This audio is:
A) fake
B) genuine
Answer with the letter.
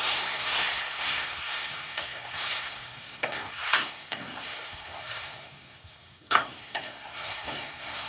A